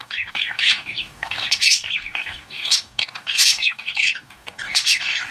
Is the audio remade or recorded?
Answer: remade